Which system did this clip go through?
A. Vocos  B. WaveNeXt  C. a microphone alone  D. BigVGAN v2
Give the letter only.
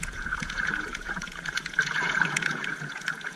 A